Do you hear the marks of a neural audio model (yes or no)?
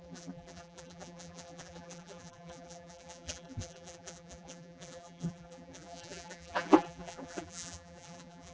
yes